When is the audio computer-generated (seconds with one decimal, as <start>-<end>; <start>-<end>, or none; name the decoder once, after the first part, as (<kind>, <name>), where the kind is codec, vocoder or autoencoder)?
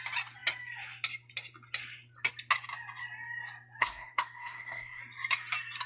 3.8-5.0 (codec, SNAC)